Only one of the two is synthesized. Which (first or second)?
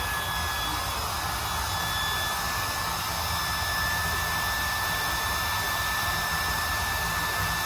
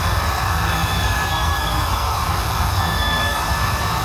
second